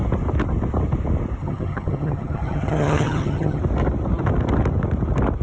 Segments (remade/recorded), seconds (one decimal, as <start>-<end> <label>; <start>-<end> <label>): 0.0-1.4 recorded; 1.4-3.6 remade; 3.6-5.4 recorded